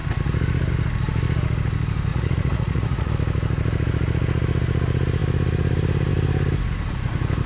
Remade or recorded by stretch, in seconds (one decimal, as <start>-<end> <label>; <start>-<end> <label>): 0.0-2.1 recorded; 2.1-3.1 remade; 3.1-7.5 recorded